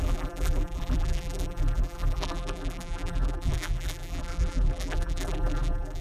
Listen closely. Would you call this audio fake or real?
fake